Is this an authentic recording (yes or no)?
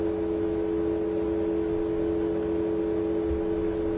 yes